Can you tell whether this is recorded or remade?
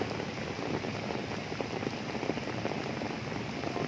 recorded